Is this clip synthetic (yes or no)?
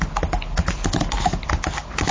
no